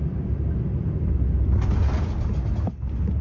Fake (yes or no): no